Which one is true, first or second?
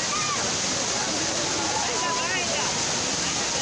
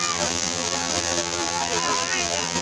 first